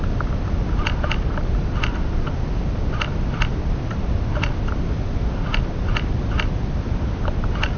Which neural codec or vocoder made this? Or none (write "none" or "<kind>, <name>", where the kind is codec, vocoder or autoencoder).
none